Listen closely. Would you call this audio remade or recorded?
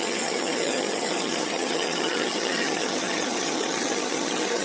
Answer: remade